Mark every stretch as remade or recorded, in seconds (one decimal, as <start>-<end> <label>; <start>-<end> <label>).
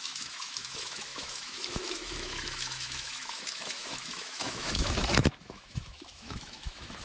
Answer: 0.0-7.0 remade